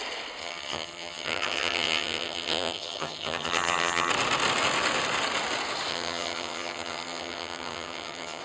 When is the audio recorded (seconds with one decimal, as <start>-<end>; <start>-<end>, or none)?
0.0-0.4; 4.1-5.9